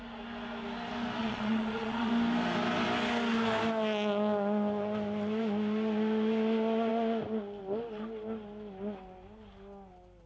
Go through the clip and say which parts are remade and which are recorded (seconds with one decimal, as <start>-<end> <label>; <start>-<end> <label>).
0.0-1.2 recorded; 1.2-2.1 remade; 2.1-10.3 recorded